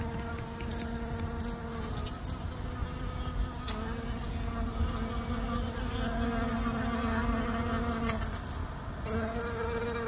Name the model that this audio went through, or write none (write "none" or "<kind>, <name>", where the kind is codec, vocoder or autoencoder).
none